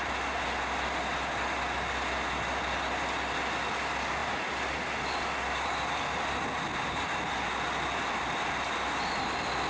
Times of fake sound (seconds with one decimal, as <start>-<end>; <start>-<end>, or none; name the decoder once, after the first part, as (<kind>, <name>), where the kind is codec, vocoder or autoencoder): none